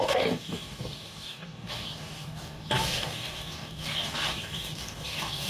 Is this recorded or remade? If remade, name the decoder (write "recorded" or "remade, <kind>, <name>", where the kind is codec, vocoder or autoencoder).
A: remade, codec, DAC